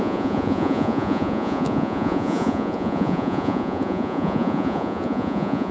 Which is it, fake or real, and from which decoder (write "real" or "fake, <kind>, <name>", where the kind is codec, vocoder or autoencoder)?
fake, vocoder, Vocos